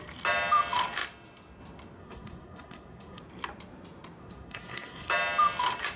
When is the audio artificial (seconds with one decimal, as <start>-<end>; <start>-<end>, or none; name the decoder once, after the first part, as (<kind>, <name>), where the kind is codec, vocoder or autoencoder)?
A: 2.0-3.2 (codec, SNAC); 4.2-5.1